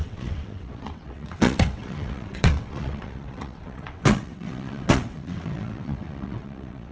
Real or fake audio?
fake